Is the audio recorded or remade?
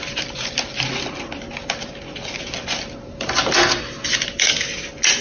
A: recorded